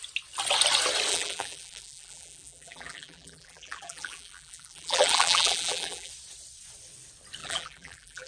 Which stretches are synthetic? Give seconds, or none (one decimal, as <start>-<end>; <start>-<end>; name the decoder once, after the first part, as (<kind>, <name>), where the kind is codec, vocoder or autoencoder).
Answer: 1.1-6.1 (vocoder, BigVGAN v2); 7.4-8.3